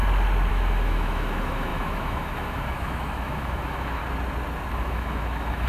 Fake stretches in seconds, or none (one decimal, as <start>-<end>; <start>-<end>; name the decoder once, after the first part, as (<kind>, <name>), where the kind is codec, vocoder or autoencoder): 0.5-4.0 (autoencoder, DAC-VAE); 4.7-5.7